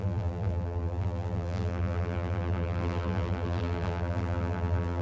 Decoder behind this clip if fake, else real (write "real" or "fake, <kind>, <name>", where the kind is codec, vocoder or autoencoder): fake, vocoder, BigVGAN v2